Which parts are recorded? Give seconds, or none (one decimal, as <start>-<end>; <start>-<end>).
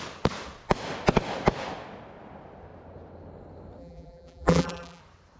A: 0.0-3.8; 5.0-5.4